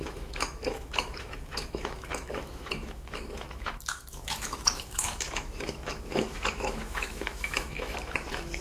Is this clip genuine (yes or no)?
no